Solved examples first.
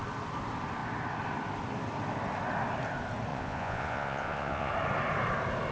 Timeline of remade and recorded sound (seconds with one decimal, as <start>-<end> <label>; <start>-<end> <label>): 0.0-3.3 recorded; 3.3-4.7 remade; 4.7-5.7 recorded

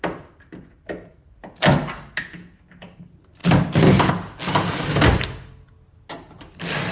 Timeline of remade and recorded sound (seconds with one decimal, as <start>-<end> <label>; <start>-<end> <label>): 0.0-6.9 recorded

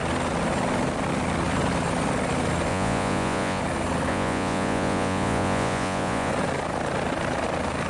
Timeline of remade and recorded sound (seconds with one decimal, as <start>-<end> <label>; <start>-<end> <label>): 0.0-2.7 recorded; 2.7-3.6 remade; 3.6-4.1 recorded; 4.1-6.3 remade; 6.3-7.9 recorded

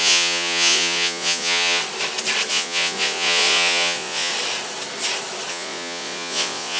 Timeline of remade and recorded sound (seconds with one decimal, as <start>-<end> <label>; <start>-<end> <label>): 0.0-1.8 remade; 1.8-2.5 recorded; 2.5-4.3 remade; 4.3-5.5 recorded; 5.5-6.8 remade

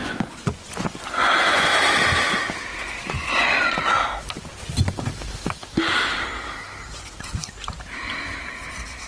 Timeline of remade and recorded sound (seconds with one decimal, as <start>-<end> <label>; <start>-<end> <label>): 0.0-1.7 remade; 1.7-2.7 recorded; 2.7-3.9 remade; 3.9-9.1 recorded

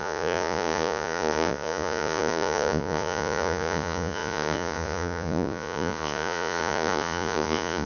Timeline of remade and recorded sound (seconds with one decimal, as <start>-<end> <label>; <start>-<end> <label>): 0.0-7.9 remade

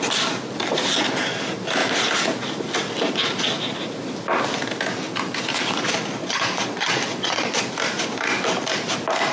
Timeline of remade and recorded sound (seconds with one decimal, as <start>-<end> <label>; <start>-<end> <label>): 0.0-6.2 recorded; 6.2-7.7 remade; 7.7-9.3 recorded